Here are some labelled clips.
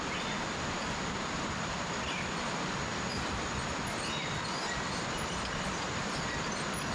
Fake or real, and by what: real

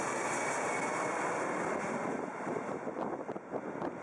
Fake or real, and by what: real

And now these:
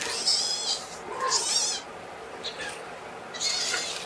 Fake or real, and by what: real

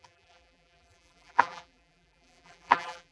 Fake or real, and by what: fake, vocoder, BigVGAN v2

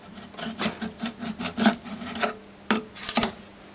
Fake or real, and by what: real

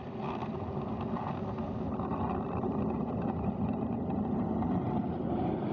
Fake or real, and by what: real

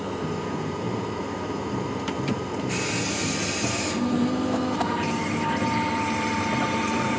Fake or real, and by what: fake, vocoder, BigVGAN v2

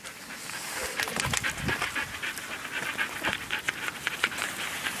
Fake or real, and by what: real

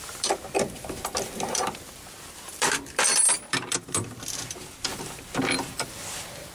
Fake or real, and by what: fake, vocoder, BigVGAN v2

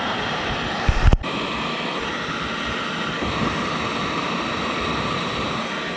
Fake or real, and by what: fake, vocoder, BigVGAN v2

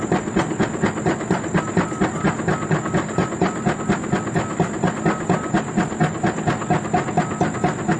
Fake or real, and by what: real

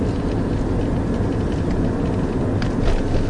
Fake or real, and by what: real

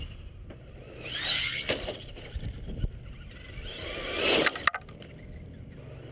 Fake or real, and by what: real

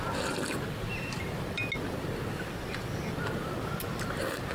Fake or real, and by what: real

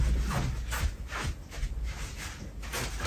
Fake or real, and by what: real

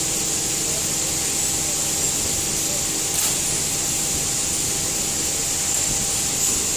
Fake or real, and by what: real